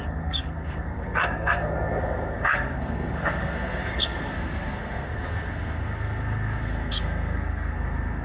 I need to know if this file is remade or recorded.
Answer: remade